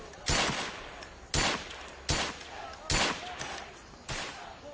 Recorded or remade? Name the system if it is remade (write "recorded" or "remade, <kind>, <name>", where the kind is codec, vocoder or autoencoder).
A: recorded